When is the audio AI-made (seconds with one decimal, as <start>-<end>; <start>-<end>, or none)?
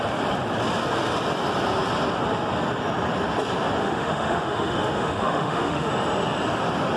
3.8-5.9